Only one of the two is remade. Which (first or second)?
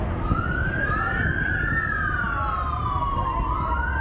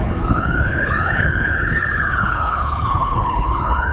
second